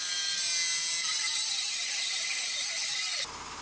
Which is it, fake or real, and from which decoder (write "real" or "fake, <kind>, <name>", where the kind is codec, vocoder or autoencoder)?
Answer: real